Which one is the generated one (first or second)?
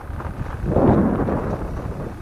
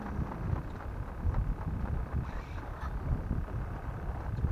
first